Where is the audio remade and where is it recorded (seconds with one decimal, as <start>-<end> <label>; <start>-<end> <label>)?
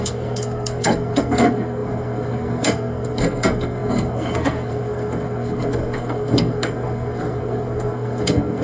0.0-8.6 remade